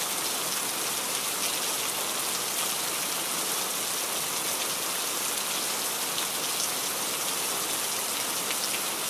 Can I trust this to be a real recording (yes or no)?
yes